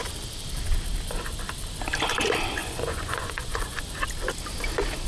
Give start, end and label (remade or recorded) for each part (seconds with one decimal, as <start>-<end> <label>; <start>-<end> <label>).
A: 0.0-2.6 recorded; 2.6-3.8 remade; 3.8-5.1 recorded